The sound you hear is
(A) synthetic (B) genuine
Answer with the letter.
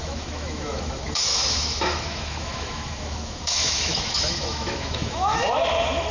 A